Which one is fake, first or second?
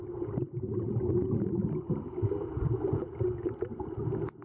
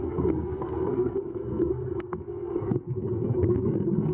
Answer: second